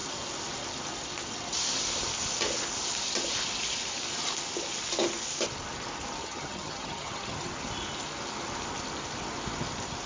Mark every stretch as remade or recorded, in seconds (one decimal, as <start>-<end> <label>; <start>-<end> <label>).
0.0-6.2 recorded; 6.2-7.5 remade; 7.5-10.1 recorded